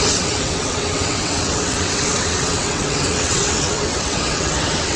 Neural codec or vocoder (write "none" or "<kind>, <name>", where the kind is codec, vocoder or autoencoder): vocoder, WaveNeXt